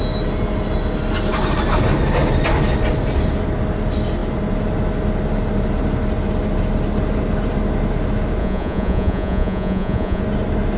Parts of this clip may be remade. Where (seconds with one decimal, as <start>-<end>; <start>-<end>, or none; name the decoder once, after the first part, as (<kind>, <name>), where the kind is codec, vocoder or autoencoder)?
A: 8.4-10.2 (vocoder, Vocos)